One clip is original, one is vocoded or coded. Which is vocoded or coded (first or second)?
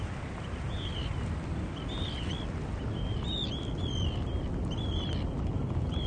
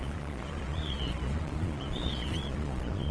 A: second